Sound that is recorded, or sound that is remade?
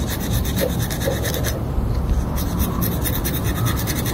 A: recorded